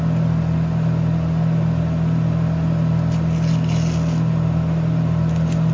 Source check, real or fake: real